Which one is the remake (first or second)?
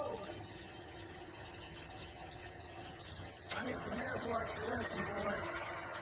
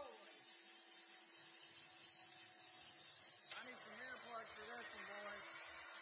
first